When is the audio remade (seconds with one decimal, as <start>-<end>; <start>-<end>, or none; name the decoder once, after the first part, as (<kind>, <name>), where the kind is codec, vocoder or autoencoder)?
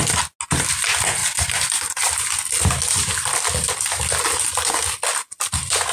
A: none